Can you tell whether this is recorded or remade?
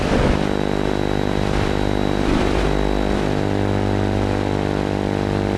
recorded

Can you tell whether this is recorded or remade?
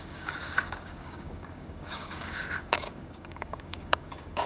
remade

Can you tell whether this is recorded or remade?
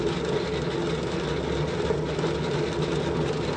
recorded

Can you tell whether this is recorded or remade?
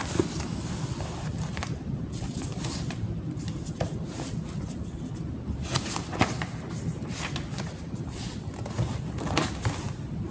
recorded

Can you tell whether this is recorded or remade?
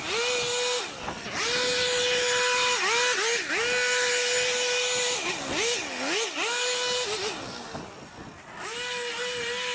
recorded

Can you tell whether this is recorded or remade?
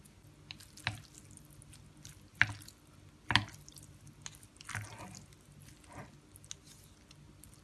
recorded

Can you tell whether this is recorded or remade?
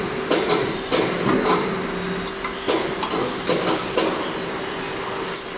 recorded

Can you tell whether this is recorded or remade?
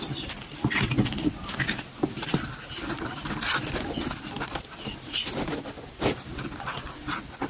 recorded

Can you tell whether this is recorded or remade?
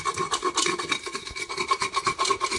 recorded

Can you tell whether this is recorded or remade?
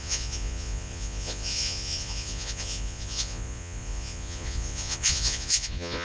remade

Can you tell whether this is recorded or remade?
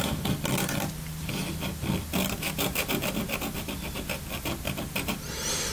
recorded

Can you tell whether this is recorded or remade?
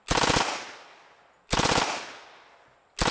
recorded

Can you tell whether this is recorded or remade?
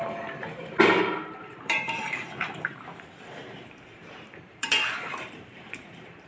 remade